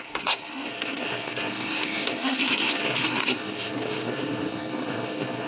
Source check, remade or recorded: remade